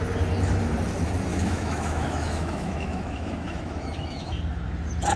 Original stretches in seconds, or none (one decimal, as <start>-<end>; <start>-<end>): 0.0-1.3; 4.4-5.2